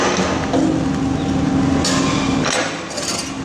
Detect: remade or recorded recorded